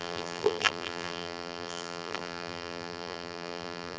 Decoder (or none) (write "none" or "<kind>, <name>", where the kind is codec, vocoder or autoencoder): vocoder, BigVGAN v2